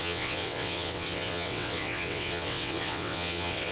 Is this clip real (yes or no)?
no